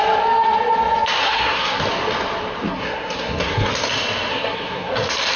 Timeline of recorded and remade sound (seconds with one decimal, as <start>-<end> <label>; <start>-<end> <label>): 0.0-1.2 recorded; 1.2-1.8 remade; 1.8-2.7 recorded; 2.7-3.7 remade; 3.7-4.3 recorded; 4.3-4.9 remade; 4.9-5.4 recorded